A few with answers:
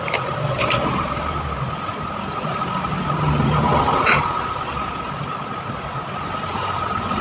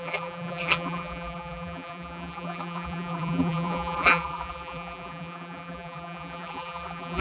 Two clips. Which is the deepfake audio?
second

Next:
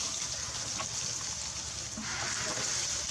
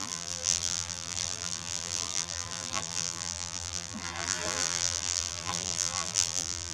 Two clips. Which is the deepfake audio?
second